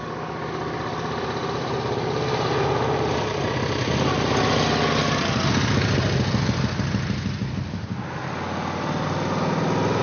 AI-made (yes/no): no